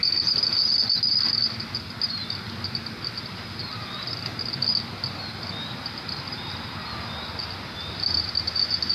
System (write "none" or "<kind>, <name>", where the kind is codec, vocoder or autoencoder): none